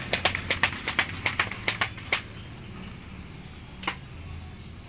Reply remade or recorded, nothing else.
recorded